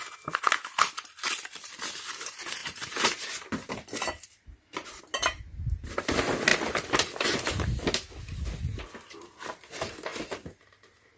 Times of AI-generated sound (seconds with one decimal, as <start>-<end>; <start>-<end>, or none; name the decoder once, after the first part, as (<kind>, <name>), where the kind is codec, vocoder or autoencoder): 2.6-5.0 (vocoder, BigVGAN v2)